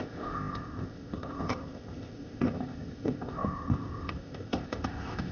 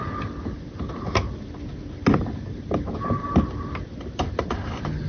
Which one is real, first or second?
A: second